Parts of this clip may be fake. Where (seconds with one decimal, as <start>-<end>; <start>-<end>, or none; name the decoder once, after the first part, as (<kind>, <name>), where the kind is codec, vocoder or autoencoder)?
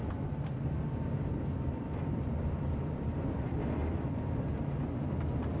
0.0-3.4 (vocoder, BigVGAN v2); 3.8-4.6